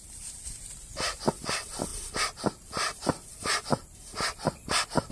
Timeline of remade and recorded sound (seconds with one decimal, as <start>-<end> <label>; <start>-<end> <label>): 0.0-5.1 recorded